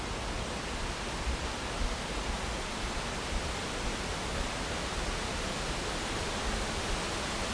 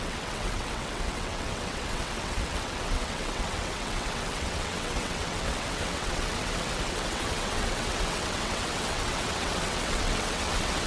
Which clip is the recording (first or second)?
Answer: first